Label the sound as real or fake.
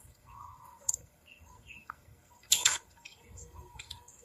fake